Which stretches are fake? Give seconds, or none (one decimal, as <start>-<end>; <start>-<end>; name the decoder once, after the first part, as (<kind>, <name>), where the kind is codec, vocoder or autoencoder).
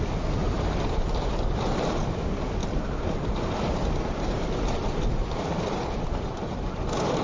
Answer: 0.4-1.9 (vocoder, BigVGAN v2); 2.6-6.7